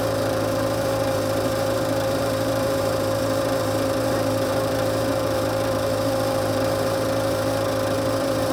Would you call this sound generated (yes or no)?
yes